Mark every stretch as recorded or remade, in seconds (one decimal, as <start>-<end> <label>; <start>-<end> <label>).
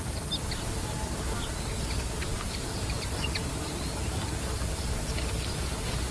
0.0-2.3 recorded; 2.3-6.1 remade